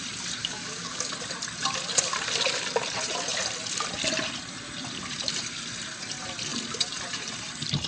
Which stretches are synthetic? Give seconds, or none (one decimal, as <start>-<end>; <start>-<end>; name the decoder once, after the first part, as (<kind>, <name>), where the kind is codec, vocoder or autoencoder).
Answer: 0.4-1.1 (codec, DAC)